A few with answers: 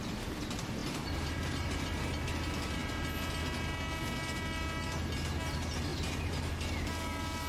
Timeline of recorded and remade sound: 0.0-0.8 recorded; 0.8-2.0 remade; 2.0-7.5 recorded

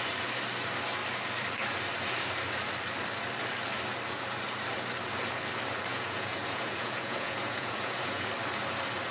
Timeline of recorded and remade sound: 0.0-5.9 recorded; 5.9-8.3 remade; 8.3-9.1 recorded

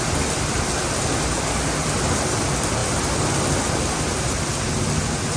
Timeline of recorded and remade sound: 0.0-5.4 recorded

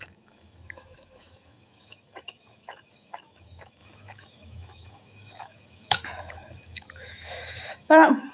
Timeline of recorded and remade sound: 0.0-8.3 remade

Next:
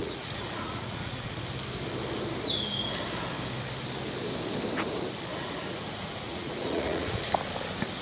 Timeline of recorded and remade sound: 0.0-1.4 remade; 1.4-5.3 recorded; 5.3-7.2 remade; 7.2-8.0 recorded

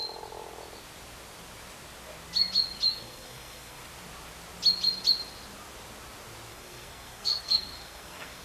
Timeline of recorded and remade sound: 0.0-2.9 recorded; 2.9-3.8 remade; 3.8-6.5 recorded; 6.5-8.4 remade

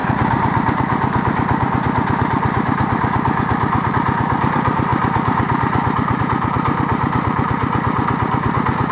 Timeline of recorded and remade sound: 0.0-7.6 remade; 7.6-8.5 recorded; 8.5-8.9 remade

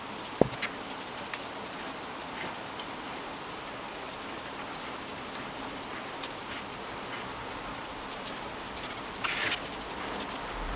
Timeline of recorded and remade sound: 0.0-5.1 recorded; 5.1-5.9 remade; 5.9-10.8 recorded